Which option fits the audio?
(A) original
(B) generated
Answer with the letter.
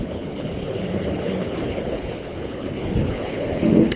B